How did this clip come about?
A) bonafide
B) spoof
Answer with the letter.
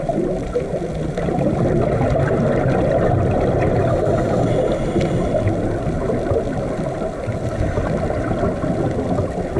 A